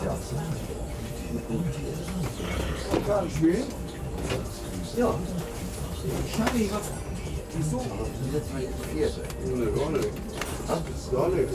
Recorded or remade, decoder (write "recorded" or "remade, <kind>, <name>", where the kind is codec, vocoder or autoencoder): recorded